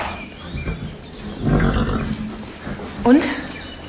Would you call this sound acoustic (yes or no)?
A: yes